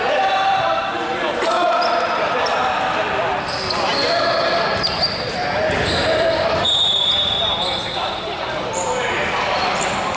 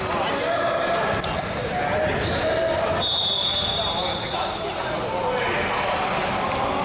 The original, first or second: second